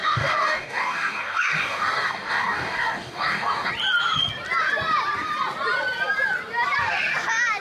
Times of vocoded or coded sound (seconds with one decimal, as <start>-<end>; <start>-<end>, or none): 0.0-3.7